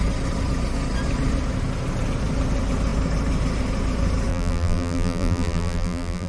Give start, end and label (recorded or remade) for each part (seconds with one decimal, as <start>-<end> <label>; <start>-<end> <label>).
0.0-4.3 recorded; 4.3-6.3 remade